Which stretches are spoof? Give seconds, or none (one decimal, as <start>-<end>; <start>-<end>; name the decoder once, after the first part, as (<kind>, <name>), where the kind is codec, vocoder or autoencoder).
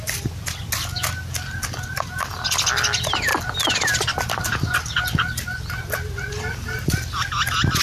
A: none